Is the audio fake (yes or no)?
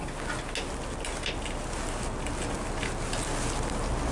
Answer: no